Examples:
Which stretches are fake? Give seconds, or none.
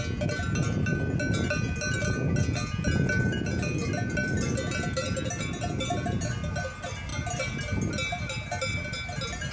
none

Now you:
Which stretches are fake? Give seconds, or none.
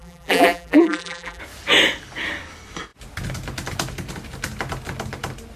0.0-1.4 (vocoder, BigVGAN v2)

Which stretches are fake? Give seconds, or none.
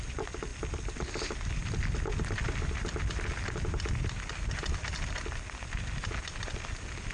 none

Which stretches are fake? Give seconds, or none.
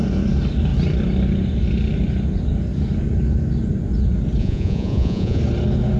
4.4-5.4 (vocoder, Vocos)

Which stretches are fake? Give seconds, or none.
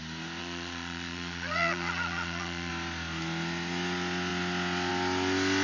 0.4-2.7 (vocoder, Vocos)